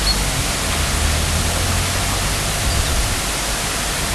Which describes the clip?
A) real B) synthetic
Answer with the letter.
A